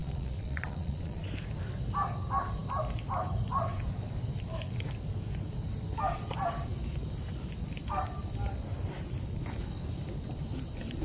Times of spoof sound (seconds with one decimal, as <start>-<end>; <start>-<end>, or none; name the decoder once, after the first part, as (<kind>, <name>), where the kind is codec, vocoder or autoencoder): 0.0-1.3 (vocoder, Vocos)

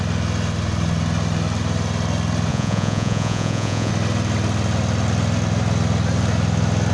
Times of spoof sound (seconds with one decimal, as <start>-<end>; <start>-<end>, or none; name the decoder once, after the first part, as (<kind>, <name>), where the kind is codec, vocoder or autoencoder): 2.5-3.9 (vocoder, Vocos)

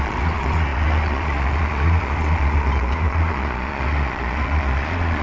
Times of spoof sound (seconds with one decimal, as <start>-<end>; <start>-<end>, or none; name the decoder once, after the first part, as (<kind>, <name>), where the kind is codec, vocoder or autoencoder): 0.0-5.2 (vocoder, Vocos)